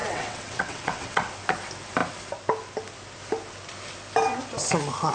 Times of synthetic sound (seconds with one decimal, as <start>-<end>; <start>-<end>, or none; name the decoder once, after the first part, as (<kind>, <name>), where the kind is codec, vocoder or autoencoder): 0.0-1.3 (vocoder, WaveNeXt)